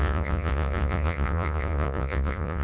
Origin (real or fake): fake